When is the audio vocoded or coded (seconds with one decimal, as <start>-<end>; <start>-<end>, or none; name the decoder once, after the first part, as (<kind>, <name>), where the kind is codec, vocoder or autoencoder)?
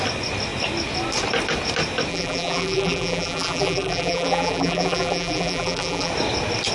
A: 2.1-6.1 (vocoder, BigVGAN v2)